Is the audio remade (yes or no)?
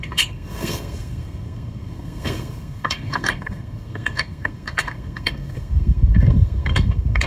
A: yes